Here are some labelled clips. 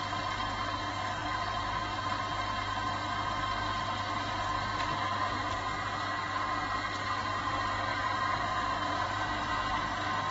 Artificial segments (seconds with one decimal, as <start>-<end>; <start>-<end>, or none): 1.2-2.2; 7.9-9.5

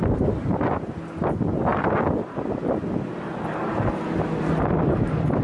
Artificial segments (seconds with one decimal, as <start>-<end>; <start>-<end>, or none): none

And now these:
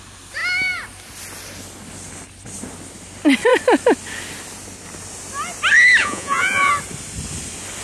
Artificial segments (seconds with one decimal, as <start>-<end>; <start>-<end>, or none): 6.0-6.7

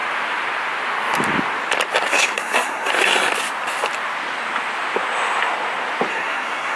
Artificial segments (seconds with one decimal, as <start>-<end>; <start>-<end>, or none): 2.1-2.9; 6.1-6.8

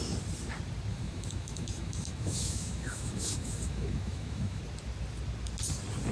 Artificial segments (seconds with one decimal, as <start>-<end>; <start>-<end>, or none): 0.9-4.6

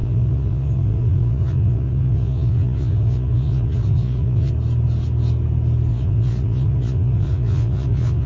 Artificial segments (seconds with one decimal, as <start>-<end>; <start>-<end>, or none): 0.0-4.5; 5.9-8.3

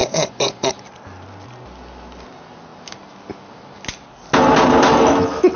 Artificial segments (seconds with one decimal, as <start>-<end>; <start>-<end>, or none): 0.0-0.7